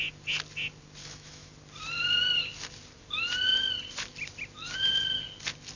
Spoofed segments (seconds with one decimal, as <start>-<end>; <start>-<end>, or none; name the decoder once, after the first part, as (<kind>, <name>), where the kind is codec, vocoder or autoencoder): 1.0-1.5 (autoencoder, DAC-VAE)